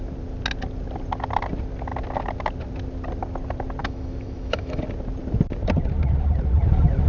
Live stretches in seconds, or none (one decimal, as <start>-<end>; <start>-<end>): 0.0-3.8; 4.8-7.1